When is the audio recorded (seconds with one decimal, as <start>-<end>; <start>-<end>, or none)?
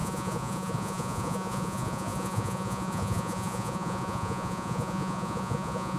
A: none